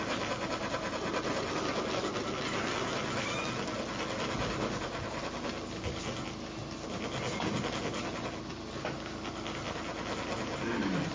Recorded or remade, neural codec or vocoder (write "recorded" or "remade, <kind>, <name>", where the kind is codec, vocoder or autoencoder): recorded